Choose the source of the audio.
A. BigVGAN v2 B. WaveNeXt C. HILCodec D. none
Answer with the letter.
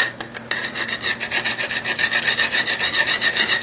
D